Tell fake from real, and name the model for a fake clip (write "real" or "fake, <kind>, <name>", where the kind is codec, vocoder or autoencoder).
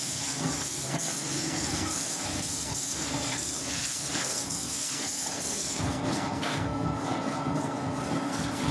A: fake, codec, SNAC